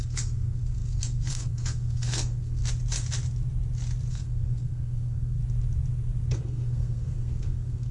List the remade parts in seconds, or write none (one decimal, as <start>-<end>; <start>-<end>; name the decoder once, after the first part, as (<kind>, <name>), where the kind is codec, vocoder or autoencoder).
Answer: 0.0-2.6 (codec, SNAC); 4.1-5.4; 6.3-7.9